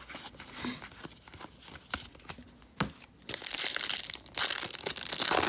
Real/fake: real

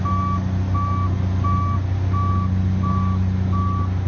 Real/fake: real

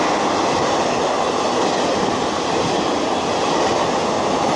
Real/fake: real